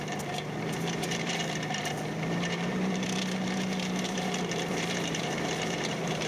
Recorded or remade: remade